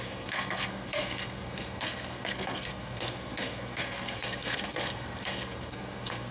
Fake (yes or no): yes